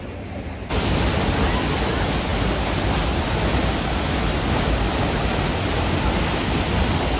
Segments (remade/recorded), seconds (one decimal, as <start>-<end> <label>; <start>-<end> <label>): 0.0-7.2 recorded